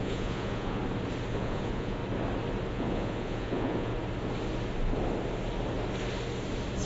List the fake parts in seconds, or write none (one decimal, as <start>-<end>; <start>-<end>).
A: 0.0-0.8; 1.3-2.0; 2.7-3.9

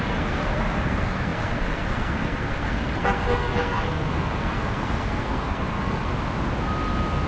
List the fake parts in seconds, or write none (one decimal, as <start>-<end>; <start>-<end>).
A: 0.0-6.1

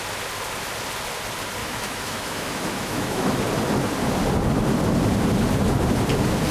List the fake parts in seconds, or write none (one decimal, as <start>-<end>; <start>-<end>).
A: 1.6-3.4

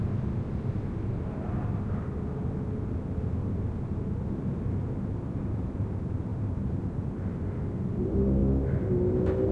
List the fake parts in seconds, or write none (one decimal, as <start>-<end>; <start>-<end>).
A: none

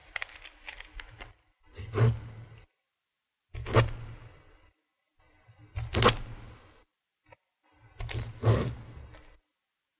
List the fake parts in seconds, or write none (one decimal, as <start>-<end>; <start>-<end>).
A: 0.0-1.6

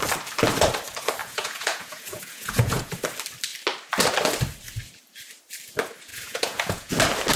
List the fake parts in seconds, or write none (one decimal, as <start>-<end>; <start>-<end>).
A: 1.2-3.0; 6.1-6.9

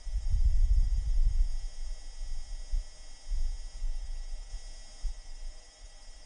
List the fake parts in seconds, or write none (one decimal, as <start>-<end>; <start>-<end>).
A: 0.0-1.5; 3.8-4.5; 5.1-6.3